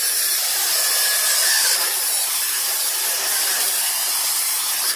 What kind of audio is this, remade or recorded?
remade